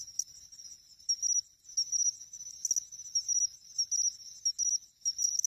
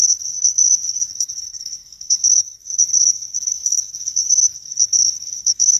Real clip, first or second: first